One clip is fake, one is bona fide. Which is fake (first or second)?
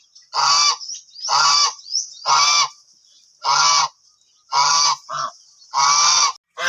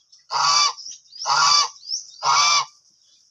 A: second